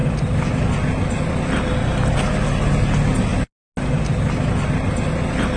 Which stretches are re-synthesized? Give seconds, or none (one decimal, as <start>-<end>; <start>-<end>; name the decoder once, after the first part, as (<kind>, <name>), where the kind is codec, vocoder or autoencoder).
none